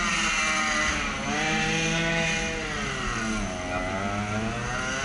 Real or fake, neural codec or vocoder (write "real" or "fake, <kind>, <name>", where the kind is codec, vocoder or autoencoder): real